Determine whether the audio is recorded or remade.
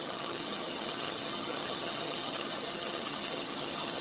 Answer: remade